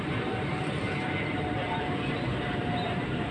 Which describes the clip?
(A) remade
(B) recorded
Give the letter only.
A